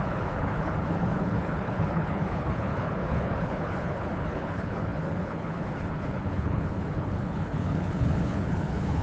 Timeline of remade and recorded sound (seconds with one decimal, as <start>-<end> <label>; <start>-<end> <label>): 0.0-9.0 remade